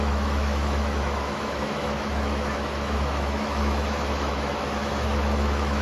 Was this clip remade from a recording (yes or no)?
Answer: yes